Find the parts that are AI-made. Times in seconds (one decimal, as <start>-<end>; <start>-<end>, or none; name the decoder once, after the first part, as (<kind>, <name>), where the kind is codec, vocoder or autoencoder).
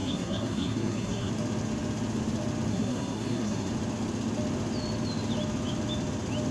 0.0-1.3 (codec, SNAC); 2.7-3.7